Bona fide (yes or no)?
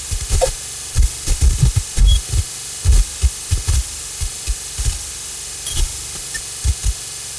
yes